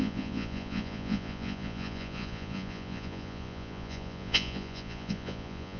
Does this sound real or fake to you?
fake